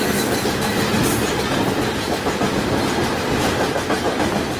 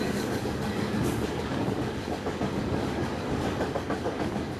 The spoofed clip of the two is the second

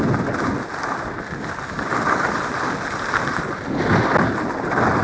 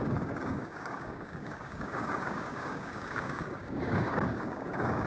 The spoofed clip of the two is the second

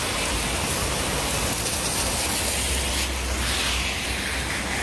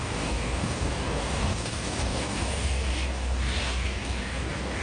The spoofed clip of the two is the second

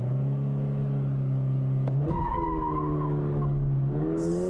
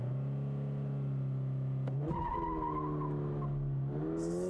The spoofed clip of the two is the first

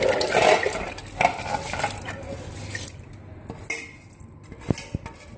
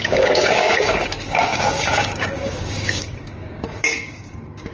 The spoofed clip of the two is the second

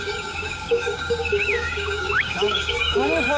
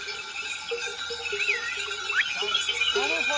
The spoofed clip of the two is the first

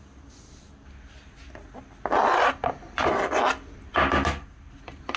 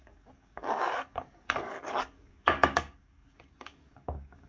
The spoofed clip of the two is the second